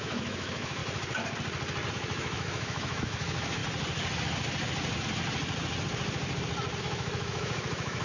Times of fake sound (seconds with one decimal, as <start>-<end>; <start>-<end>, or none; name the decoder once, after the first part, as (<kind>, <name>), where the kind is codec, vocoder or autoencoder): 0.0-0.8 (autoencoder, DAC-VAE); 1.9-3.6; 6.8-8.0